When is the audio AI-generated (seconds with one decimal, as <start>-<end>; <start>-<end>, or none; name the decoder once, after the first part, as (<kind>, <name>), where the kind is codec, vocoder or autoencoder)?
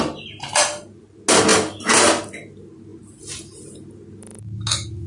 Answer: none